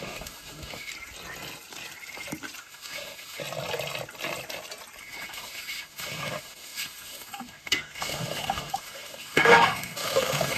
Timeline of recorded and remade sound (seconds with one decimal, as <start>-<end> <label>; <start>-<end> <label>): 0.0-0.9 remade; 0.9-2.6 recorded; 2.6-3.4 remade; 3.4-5.0 recorded; 5.0-10.6 remade